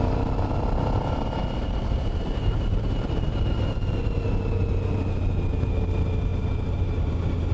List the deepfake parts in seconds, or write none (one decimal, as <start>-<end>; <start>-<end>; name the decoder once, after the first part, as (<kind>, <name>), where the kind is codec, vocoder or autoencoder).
1.4-2.9 (vocoder, BigVGAN v2); 6.3-7.1